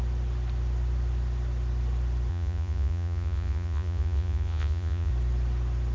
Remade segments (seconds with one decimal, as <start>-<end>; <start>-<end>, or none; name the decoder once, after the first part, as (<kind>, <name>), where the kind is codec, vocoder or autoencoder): 2.3-5.1 (vocoder, Vocos)